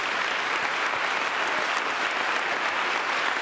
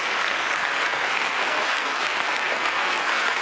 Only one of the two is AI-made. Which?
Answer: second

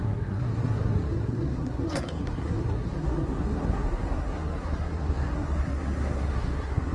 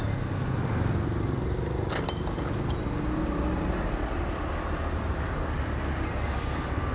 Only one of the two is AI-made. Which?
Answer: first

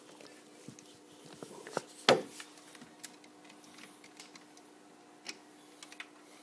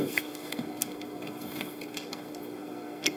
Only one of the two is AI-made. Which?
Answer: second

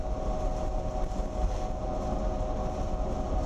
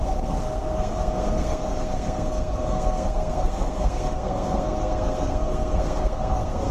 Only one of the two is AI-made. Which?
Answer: second